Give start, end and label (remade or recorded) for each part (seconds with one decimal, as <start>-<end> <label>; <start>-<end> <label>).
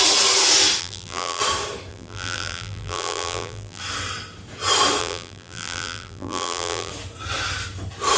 0.0-0.8 recorded; 0.8-1.4 remade; 1.4-1.9 recorded; 1.9-3.8 remade; 3.8-5.0 recorded; 5.0-6.9 remade; 6.9-8.2 recorded